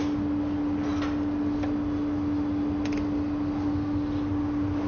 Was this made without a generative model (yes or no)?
yes